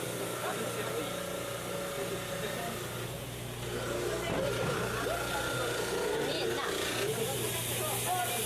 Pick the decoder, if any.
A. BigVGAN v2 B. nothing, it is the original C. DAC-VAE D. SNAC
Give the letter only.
B